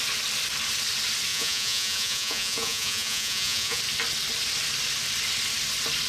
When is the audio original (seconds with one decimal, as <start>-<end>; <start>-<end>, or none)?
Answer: 0.0-1.3; 3.8-6.1